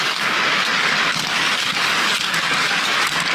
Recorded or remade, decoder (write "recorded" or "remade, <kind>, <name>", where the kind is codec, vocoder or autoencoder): remade, codec, DAC